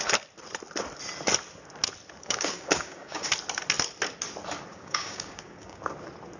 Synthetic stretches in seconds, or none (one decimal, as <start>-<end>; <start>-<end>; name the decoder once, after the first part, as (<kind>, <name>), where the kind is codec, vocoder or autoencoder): 2.2-3.3 (codec, DAC); 4.7-5.8